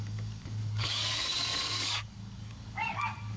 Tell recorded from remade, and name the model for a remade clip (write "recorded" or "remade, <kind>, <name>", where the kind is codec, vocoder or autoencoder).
remade, codec, DAC